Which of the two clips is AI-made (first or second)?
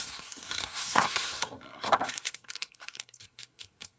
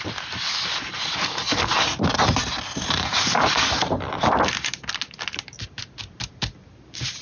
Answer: first